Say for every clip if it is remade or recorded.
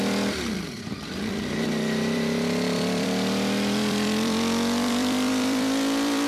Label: remade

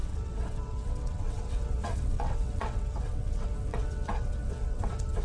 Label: remade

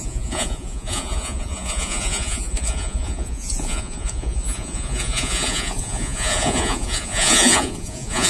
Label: remade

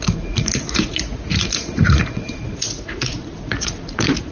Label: remade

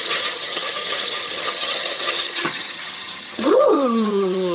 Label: remade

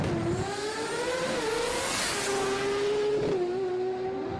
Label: recorded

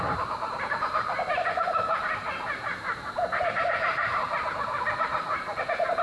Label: remade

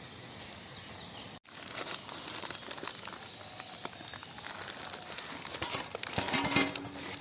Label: recorded